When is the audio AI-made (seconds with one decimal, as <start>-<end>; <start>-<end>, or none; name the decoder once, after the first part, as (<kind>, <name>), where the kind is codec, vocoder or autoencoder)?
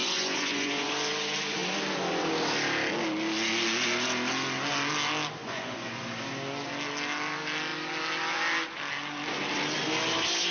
0.0-0.9 (vocoder, Vocos); 5.4-6.0